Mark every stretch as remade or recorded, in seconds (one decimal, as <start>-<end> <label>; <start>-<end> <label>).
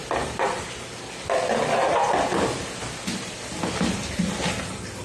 0.0-5.0 recorded